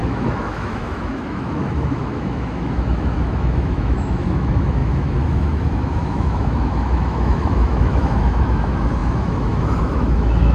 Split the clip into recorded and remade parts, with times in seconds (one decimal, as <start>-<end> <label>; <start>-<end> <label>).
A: 0.0-10.5 remade